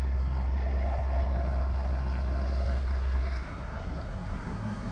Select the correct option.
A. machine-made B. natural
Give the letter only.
A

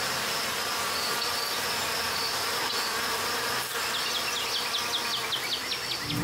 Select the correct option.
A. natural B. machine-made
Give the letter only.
A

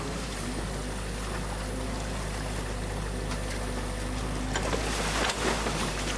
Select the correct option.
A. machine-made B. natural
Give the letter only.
B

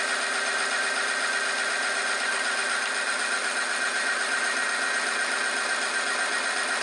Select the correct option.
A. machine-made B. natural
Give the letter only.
B